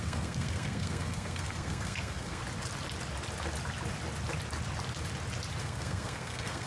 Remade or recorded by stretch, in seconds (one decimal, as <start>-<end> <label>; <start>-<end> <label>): 0.0-2.4 remade; 2.4-5.6 recorded; 5.6-6.7 remade